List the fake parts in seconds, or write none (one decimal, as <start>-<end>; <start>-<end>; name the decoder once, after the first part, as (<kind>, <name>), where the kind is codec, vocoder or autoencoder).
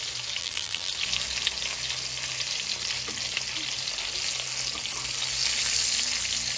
0.4-0.9 (vocoder, BigVGAN v2)